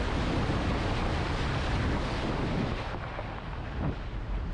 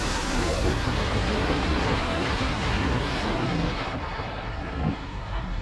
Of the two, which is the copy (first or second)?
second